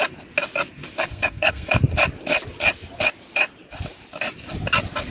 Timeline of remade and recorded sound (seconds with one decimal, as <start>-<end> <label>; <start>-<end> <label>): 0.0-1.1 recorded; 1.1-1.8 remade; 1.8-5.1 recorded